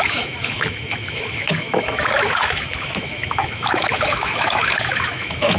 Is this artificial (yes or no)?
yes